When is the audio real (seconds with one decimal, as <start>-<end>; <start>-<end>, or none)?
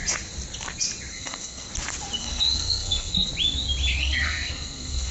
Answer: 0.0-1.1; 1.7-2.2; 3.3-4.0